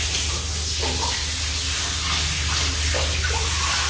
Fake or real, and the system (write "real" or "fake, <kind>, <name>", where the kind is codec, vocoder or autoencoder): real